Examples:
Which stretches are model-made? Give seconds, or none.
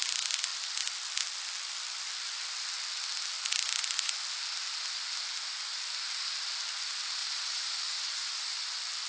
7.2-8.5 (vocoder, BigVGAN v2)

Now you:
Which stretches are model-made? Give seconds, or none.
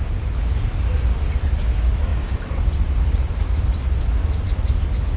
2.1-4.0 (vocoder, BigVGAN v2)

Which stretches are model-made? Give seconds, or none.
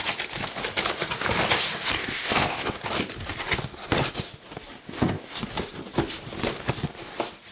2.0-2.7 (codec, ZipCodec); 4.8-5.4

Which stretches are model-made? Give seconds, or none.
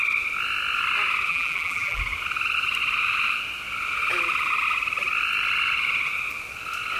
1.3-2.0 (vocoder, BigVGAN v2)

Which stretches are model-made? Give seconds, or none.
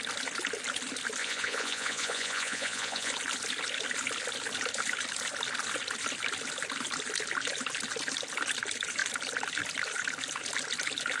1.2-3.1 (vocoder, Vocos)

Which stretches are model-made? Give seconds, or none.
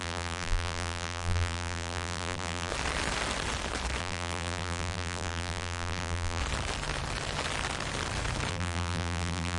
0.0-2.7 (vocoder, BigVGAN v2); 4.0-6.4; 8.5-9.6